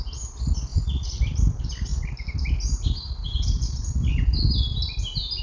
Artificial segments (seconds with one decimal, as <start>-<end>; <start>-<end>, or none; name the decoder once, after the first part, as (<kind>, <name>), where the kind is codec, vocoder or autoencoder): 0.7-1.2 (vocoder, Vocos)